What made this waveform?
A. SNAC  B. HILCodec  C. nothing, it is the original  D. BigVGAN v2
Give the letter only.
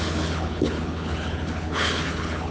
B